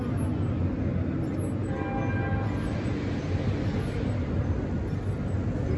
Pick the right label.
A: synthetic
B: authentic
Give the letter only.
B